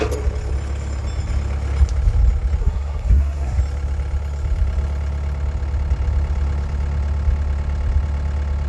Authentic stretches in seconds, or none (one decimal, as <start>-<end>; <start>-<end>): 0.0-2.6; 3.6-8.7